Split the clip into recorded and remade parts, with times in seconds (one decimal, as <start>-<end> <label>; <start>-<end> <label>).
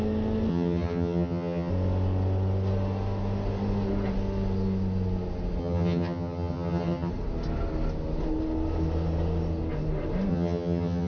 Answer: 0.0-0.5 recorded; 0.5-1.7 remade; 1.7-5.6 recorded; 5.6-7.1 remade; 7.1-10.3 recorded; 10.3-11.1 remade